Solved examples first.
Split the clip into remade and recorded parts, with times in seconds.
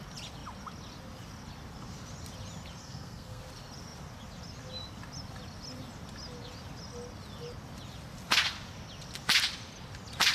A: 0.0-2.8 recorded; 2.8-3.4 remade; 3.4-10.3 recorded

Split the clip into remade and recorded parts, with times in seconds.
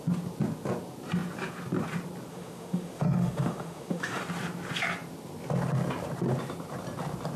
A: 0.0-2.3 recorded; 2.3-4.2 remade; 4.2-7.4 recorded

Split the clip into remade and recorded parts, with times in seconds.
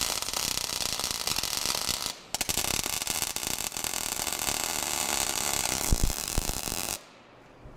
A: 0.0-1.9 remade; 1.9-2.7 recorded; 2.7-7.8 remade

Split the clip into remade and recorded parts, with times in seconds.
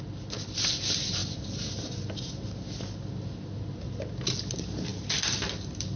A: 0.0-6.0 recorded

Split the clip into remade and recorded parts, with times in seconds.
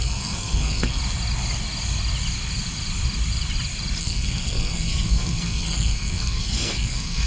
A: 0.0-1.0 remade; 1.0-4.0 recorded; 4.0-7.3 remade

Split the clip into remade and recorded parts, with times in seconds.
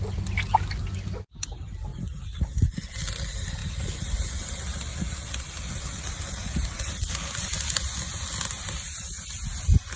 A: 0.0-10.0 recorded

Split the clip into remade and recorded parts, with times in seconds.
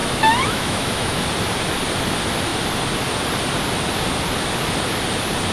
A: 0.0-1.2 remade; 1.2-5.5 recorded